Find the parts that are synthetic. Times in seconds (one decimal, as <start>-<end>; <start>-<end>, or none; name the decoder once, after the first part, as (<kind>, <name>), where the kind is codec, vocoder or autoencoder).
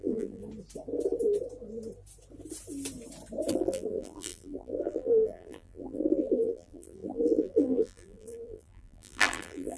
0.0-0.4 (vocoder, BigVGAN v2); 3.5-9.8